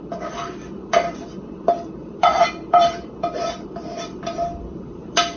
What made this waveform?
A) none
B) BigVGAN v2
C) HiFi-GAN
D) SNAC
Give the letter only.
B